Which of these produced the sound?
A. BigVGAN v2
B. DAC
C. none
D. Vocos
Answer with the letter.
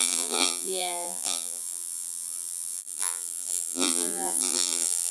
A